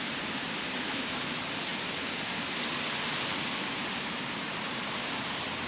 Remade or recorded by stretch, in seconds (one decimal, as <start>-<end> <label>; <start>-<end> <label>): 0.0-1.7 remade; 1.7-3.2 recorded; 3.2-5.7 remade